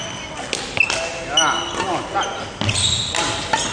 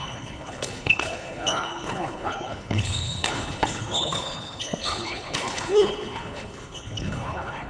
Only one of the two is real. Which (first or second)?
first